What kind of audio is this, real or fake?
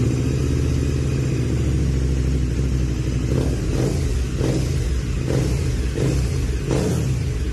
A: real